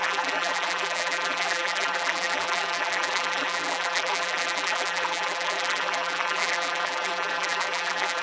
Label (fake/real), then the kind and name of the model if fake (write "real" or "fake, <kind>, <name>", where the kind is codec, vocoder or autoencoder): fake, vocoder, BigVGAN v2